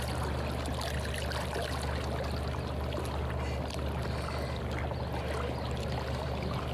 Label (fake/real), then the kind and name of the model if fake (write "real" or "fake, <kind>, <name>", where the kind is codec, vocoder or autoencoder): real